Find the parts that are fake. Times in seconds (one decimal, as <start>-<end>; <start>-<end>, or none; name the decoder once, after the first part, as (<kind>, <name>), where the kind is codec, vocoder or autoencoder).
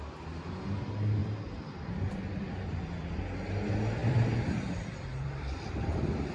1.2-3.2 (vocoder, BigVGAN v2); 4.0-6.3